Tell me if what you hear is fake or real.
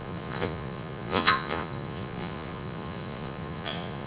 fake